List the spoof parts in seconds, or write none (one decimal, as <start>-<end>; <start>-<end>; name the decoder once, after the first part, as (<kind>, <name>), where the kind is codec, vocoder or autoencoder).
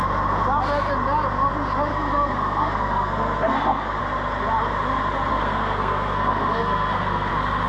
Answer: 1.9-4.0 (codec, SNAC); 5.3-7.3